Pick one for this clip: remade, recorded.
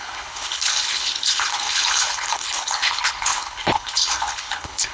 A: remade